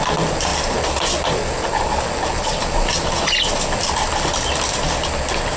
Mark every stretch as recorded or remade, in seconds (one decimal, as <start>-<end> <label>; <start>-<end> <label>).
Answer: 0.0-5.6 recorded